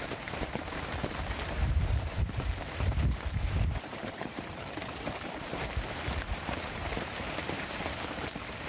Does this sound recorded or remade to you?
remade